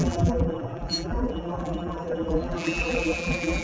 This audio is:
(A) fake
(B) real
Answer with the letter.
A